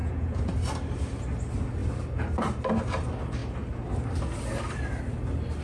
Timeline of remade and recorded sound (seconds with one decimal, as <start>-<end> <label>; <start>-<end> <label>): 0.0-0.5 remade; 0.5-5.6 recorded